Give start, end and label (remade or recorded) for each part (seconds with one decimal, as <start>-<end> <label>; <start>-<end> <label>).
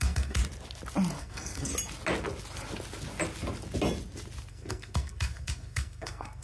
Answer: 0.0-0.4 remade; 0.4-1.2 recorded; 1.2-1.7 remade; 1.7-4.5 recorded; 4.5-6.4 remade